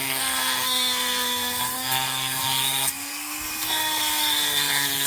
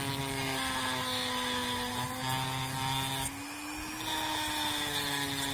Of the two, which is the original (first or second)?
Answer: second